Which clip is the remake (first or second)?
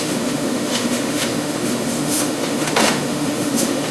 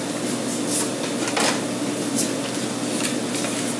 first